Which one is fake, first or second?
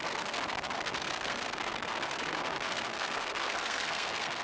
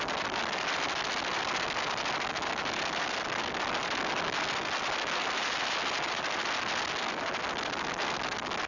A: first